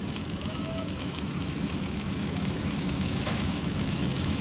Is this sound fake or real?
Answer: fake